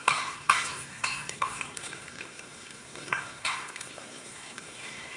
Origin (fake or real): fake